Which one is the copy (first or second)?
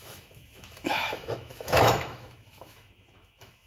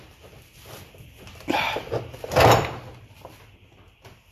first